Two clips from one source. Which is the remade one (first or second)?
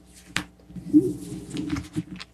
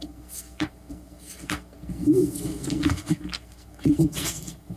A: second